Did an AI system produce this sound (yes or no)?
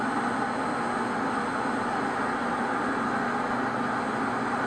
no